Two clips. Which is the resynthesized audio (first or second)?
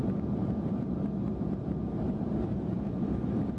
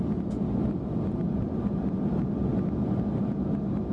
first